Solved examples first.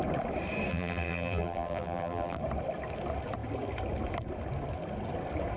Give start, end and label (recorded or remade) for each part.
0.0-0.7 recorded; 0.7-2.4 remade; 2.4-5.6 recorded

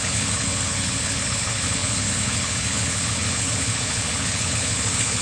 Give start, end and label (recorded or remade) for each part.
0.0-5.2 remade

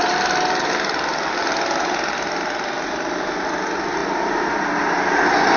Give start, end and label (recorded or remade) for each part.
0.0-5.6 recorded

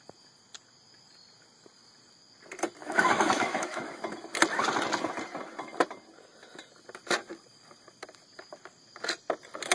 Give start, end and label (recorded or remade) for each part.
0.0-2.8 recorded; 2.8-4.0 remade; 4.0-9.7 recorded

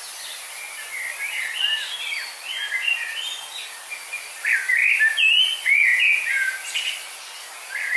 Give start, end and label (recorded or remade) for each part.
0.0-5.9 recorded; 5.9-6.5 remade; 6.5-8.0 recorded